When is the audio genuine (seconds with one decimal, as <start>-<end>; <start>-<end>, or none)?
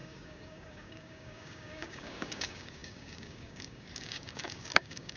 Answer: none